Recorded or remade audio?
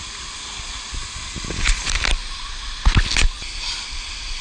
recorded